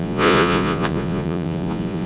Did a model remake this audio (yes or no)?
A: yes